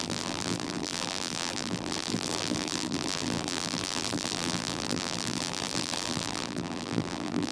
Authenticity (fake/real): fake